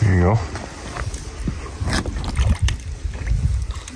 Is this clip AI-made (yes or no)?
no